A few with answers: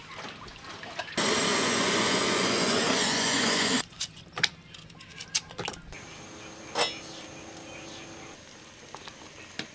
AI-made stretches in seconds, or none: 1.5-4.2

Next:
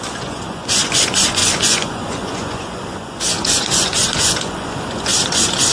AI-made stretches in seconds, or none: 0.0-5.7

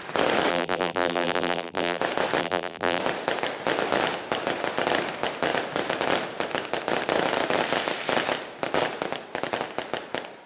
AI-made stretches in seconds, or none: 0.5-2.0; 2.4-3.0

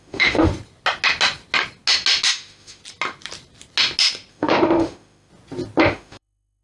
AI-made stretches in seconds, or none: 0.0-0.5; 2.3-2.8; 4.3-5.3; 5.8-6.6

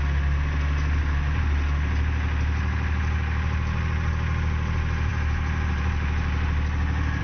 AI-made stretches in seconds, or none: none

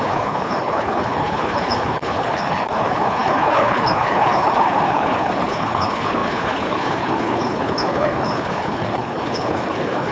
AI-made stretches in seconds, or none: 0.0-10.1

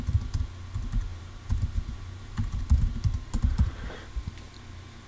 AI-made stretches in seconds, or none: 1.1-2.6

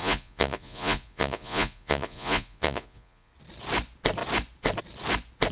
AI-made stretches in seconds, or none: 0.0-3.3